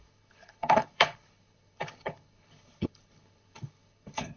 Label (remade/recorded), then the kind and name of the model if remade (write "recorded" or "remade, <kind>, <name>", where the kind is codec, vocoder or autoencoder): remade, codec, HILCodec